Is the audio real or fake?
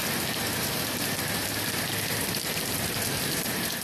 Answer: fake